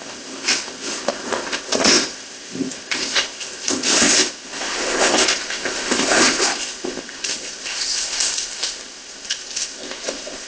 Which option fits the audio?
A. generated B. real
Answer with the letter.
A